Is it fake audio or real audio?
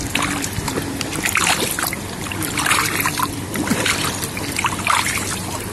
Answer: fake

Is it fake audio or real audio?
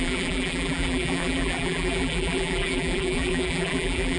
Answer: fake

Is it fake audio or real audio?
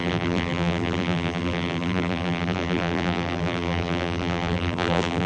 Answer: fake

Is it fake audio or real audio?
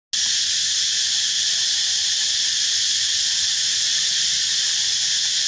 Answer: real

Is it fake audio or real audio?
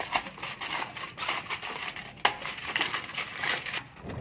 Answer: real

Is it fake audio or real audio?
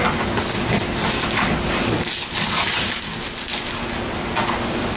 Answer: real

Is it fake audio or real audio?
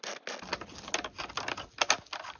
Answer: real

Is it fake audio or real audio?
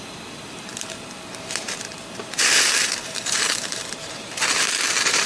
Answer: fake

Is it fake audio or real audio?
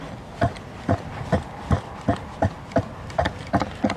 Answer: real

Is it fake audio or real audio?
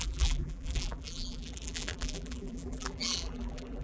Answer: fake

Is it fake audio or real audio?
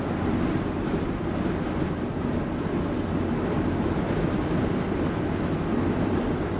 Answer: fake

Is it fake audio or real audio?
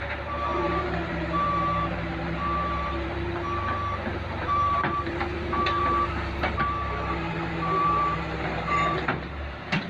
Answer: fake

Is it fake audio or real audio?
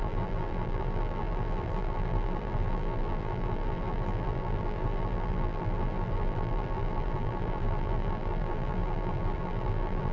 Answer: fake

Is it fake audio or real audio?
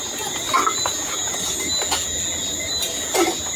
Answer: real